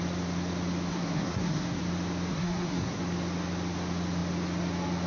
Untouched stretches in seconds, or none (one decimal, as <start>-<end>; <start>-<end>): 0.0-0.9; 1.8-2.3; 3.0-5.1

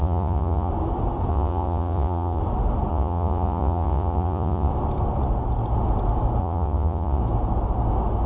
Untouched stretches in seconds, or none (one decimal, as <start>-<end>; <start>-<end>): 0.7-1.3; 2.4-2.9; 4.7-6.4; 7.2-8.3